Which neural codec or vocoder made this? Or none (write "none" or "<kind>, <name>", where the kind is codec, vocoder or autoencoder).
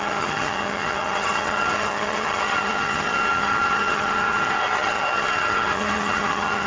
vocoder, HiFi-GAN